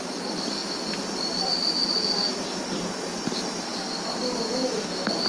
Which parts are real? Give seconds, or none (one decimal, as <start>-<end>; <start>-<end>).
0.0-5.3